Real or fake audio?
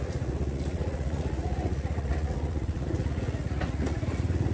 fake